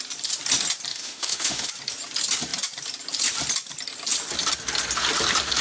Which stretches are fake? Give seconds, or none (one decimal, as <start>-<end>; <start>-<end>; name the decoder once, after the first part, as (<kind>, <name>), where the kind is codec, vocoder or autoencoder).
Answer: 0.9-1.7 (autoencoder, DAC-VAE)